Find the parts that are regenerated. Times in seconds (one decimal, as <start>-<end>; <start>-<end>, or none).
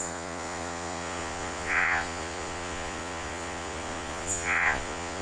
0.0-5.2